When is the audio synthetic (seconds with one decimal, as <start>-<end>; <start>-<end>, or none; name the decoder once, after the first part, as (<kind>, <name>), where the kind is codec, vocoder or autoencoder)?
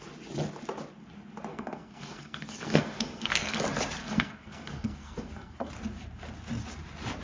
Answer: 1.5-3.6 (codec, SNAC); 4.0-5.7